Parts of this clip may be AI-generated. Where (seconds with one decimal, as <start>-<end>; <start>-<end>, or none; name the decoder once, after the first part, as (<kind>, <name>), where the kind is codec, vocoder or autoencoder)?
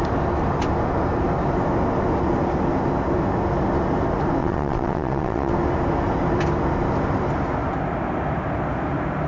4.4-5.5 (vocoder, WaveNeXt)